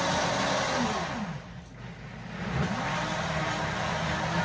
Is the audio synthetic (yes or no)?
no